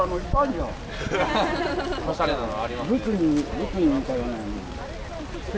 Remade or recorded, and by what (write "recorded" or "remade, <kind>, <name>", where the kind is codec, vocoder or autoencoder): recorded